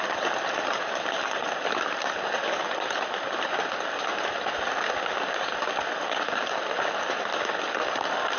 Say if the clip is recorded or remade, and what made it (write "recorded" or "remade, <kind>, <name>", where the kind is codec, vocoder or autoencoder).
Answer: recorded